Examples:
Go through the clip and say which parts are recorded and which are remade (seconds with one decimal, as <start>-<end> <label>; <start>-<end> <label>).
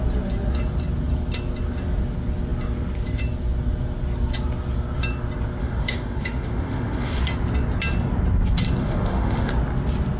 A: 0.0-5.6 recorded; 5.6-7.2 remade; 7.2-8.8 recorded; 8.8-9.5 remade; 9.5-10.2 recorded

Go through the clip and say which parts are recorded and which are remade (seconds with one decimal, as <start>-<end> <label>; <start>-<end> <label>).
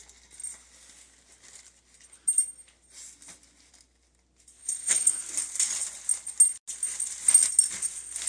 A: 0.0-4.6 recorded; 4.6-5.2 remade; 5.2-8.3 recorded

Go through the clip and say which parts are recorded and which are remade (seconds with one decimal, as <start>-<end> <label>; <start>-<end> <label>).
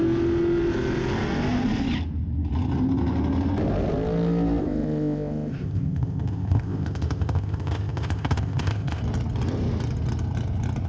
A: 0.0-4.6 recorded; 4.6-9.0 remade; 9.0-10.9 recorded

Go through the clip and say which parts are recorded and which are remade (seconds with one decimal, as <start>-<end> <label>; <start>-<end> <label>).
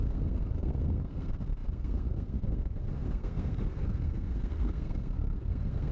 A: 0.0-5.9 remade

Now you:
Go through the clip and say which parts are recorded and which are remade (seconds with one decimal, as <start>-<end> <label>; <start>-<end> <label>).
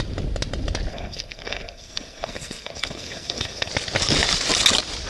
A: 0.0-0.9 recorded; 0.9-3.7 remade; 3.7-5.1 recorded